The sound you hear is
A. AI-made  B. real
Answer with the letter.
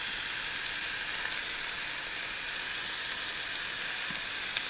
B